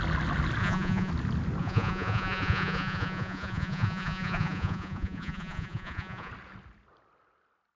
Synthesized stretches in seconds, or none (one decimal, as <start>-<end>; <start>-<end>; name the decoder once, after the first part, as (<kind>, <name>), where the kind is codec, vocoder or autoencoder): 0.6-1.1 (vocoder, Vocos); 1.6-6.3